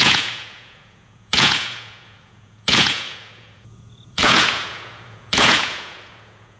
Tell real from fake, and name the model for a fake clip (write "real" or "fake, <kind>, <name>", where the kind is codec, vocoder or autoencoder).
fake, vocoder, Vocos